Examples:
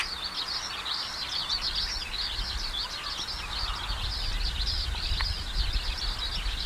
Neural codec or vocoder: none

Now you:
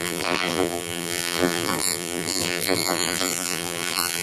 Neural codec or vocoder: vocoder, BigVGAN v2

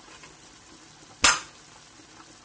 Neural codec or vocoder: none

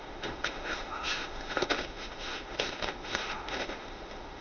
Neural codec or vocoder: autoencoder, DAC-VAE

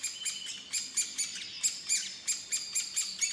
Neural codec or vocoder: none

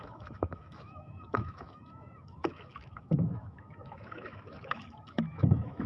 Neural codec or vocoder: autoencoder, DAC-VAE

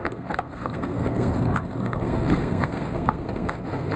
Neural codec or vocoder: codec, SNAC